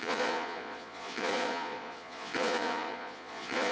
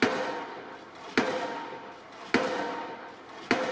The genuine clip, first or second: second